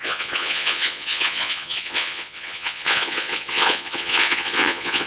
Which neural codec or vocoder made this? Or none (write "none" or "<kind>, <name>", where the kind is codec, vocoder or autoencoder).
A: vocoder, Vocos